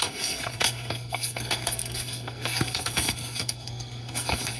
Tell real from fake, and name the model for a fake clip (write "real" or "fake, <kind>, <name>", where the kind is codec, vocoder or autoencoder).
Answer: fake, codec, SNAC